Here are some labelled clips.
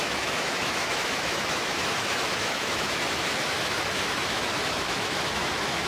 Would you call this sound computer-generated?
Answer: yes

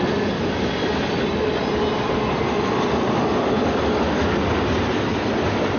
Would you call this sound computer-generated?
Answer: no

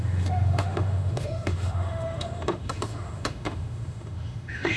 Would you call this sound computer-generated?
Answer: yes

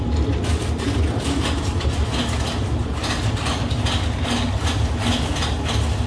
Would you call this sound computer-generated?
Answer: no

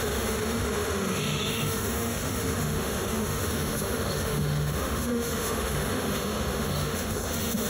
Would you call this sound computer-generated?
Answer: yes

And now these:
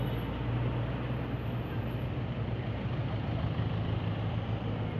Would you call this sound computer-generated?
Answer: no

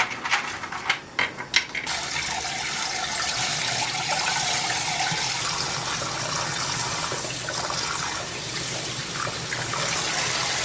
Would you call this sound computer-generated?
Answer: no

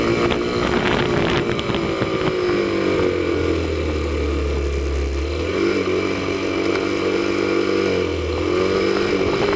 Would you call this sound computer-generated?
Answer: no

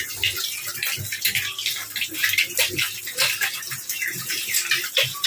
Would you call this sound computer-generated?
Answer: no